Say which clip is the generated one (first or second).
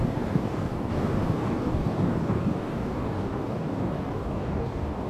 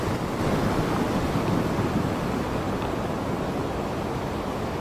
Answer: first